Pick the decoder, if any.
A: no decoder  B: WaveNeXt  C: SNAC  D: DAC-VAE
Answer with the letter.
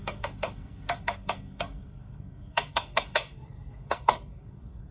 C